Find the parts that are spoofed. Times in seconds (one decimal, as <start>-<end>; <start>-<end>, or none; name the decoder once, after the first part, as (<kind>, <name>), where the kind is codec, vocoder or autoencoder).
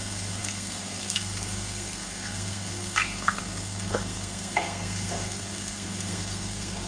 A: 0.0-6.9 (codec, SNAC)